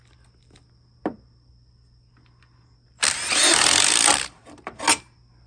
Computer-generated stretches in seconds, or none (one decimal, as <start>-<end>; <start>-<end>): none

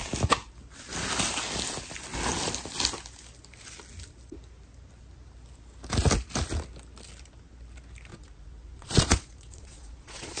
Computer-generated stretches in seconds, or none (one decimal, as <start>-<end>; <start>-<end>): 8.1-10.4

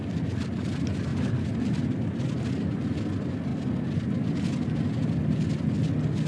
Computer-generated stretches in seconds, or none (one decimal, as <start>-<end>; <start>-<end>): 1.1-1.8